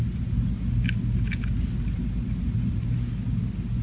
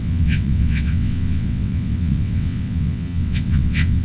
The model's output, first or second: second